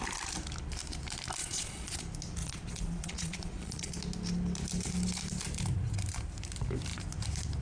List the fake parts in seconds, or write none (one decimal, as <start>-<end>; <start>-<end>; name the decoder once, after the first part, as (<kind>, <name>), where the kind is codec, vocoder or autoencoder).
1.4-2.0 (vocoder, Vocos); 2.4-3.9